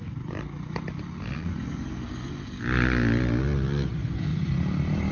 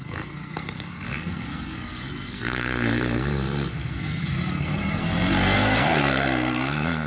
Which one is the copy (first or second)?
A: second